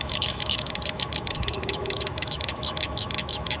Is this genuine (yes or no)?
no